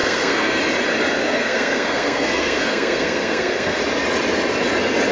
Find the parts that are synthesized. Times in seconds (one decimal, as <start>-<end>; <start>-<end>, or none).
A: 0.0-0.6; 1.2-3.8